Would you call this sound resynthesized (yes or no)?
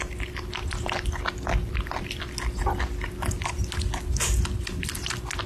no